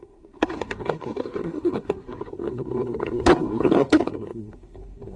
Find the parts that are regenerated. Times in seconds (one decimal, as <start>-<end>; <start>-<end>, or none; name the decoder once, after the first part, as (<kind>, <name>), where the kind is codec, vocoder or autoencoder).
0.0-5.2 (codec, SNAC)